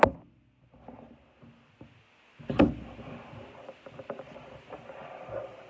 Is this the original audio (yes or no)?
yes